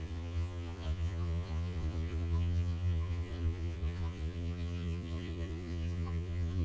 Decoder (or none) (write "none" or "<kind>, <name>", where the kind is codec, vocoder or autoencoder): vocoder, Vocos